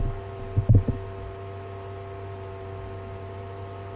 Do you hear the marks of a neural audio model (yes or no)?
no